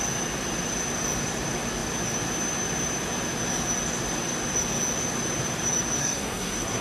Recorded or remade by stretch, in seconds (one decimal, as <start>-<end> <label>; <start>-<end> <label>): 0.0-6.0 recorded; 6.0-6.8 remade